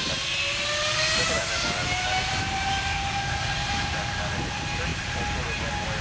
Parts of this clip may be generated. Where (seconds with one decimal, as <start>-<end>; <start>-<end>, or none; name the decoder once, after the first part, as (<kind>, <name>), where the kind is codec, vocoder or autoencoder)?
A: none